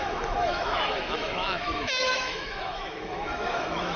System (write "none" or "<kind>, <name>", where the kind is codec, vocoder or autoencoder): autoencoder, DAC-VAE